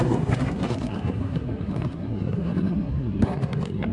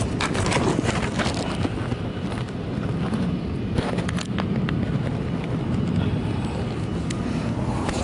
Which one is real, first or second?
second